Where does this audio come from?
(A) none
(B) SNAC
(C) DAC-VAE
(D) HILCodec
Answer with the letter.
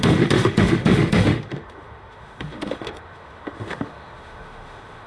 C